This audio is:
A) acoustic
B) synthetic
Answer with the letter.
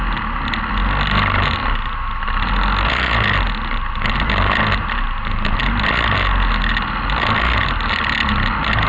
A